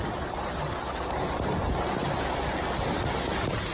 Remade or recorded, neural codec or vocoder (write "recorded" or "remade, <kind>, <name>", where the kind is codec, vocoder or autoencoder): recorded